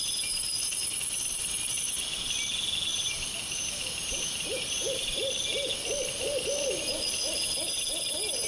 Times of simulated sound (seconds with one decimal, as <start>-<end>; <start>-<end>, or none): 2.9-5.3